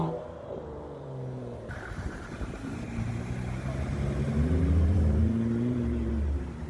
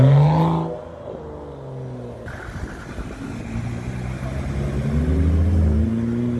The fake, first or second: first